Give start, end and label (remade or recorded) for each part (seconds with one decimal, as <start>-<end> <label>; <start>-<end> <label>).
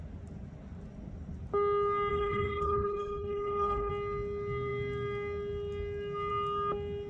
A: 0.0-2.1 recorded; 2.1-3.9 remade; 3.9-7.1 recorded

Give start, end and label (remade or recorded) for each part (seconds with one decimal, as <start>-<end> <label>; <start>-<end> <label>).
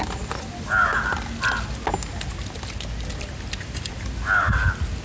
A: 0.0-5.0 recorded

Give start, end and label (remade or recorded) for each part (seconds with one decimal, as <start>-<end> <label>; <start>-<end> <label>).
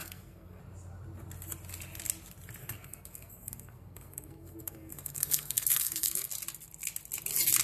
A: 0.0-0.6 remade; 0.6-2.6 recorded; 2.6-6.3 remade; 6.3-7.6 recorded